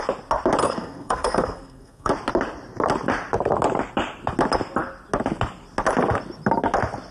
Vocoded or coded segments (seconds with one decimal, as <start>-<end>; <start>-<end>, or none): 0.6-2.1

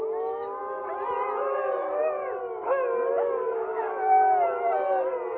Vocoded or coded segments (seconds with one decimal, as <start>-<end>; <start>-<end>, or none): 3.1-4.0